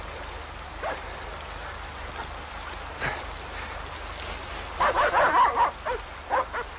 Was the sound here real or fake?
real